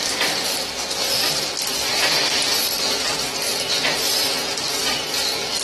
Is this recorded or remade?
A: recorded